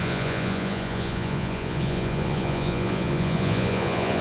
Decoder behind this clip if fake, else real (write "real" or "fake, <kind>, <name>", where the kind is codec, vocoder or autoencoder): fake, vocoder, Vocos